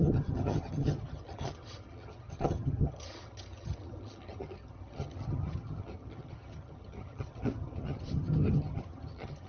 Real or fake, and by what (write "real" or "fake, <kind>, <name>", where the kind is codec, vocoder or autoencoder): fake, vocoder, HiFi-GAN